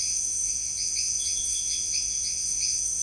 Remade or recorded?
remade